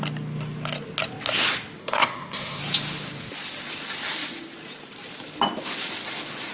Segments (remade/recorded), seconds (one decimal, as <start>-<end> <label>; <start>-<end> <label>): 0.0-1.8 recorded; 1.8-2.6 remade; 2.6-6.5 recorded